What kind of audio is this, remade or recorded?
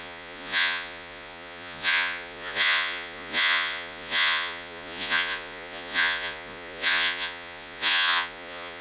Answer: remade